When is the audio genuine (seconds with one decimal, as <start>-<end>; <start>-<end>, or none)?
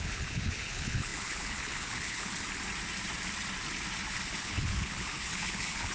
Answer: 2.3-4.4